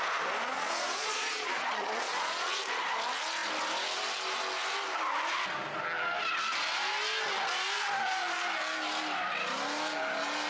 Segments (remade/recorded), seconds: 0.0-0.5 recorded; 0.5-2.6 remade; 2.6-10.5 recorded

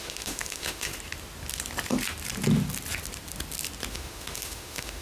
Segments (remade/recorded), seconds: 0.0-0.9 remade; 0.9-3.9 recorded; 3.9-5.0 remade

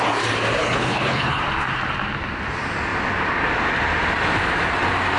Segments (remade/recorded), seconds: 0.0-0.6 recorded; 0.6-1.4 remade; 1.4-5.2 recorded